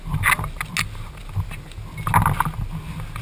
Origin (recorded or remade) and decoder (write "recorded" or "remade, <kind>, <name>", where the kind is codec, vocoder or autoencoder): recorded